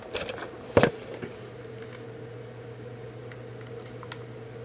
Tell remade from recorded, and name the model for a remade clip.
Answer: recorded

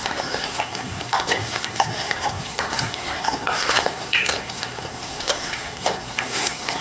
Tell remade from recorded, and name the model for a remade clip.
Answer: remade, codec, SNAC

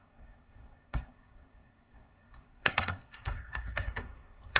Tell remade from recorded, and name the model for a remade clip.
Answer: remade, codec, SNAC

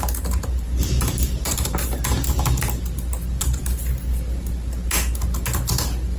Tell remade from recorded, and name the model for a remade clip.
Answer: recorded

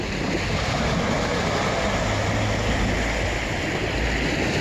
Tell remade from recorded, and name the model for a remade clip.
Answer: recorded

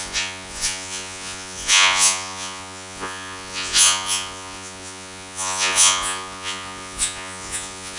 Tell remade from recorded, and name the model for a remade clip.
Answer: remade, vocoder, Vocos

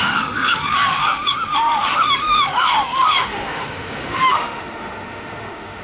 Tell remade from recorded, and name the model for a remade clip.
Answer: remade, autoencoder, DAC-VAE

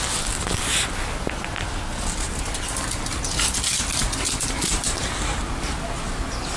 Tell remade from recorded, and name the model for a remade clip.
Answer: recorded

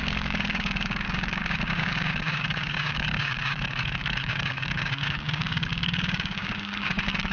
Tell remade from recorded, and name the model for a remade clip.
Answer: remade, codec, DAC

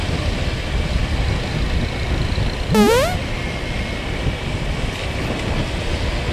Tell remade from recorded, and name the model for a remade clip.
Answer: recorded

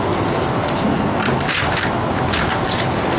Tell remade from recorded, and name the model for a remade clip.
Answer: recorded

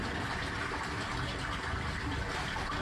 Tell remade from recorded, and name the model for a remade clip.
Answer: recorded